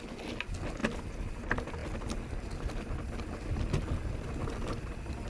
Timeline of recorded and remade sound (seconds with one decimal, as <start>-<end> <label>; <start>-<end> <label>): 0.0-5.3 recorded